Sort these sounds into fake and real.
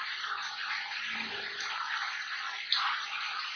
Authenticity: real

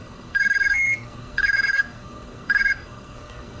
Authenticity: fake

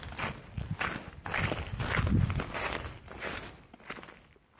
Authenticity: real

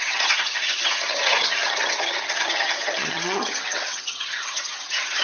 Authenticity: fake